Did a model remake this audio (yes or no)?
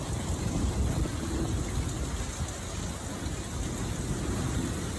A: no